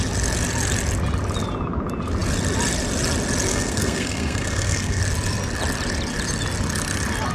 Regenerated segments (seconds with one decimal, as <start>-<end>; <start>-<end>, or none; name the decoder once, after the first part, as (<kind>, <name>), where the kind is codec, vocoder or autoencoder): 3.5-5.0 (codec, SNAC)